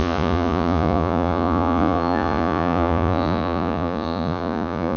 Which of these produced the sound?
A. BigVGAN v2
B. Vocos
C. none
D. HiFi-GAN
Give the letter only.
B